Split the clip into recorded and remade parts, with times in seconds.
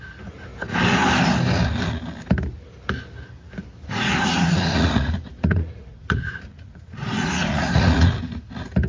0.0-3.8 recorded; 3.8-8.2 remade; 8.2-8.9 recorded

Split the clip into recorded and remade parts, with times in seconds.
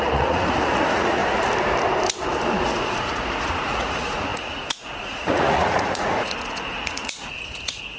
0.0-1.2 remade; 1.2-2.6 recorded; 2.6-8.0 remade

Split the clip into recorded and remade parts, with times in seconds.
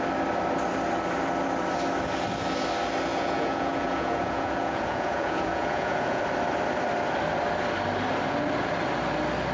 0.0-3.1 recorded; 3.1-6.2 remade; 6.2-9.5 recorded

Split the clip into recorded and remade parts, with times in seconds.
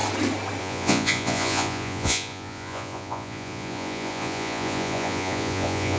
0.0-0.6 recorded; 0.6-6.0 remade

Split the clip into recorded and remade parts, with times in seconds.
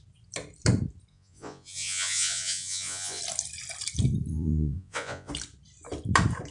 0.0-1.1 recorded; 1.1-3.2 remade; 3.2-4.3 recorded; 4.3-5.3 remade; 5.3-6.5 recorded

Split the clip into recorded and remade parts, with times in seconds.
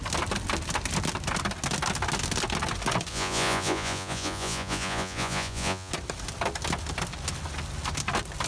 0.0-3.1 recorded; 3.1-5.9 remade; 5.9-8.5 recorded